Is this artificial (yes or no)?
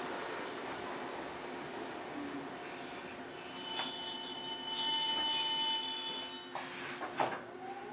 no